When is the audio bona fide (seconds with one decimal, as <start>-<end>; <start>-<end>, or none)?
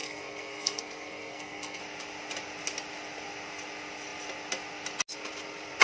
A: 1.8-5.8